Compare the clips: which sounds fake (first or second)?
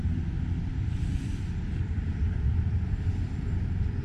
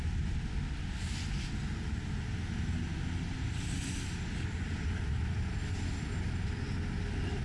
first